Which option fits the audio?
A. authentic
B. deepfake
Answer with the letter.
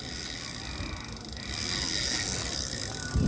A